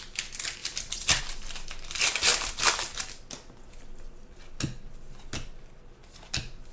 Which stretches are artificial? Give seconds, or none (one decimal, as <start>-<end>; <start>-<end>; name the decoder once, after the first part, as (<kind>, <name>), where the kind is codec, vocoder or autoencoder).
0.6-1.2 (vocoder, BigVGAN v2); 2.3-2.9